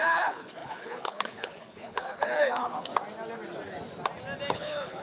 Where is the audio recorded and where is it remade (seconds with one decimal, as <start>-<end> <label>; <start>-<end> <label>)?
0.0-2.9 remade; 2.9-4.5 recorded; 4.5-5.0 remade